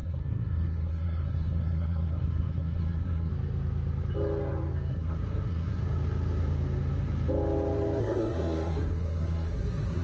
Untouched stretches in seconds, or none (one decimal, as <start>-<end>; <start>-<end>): 3.3-4.9; 5.8-8.0